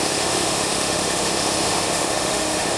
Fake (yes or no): yes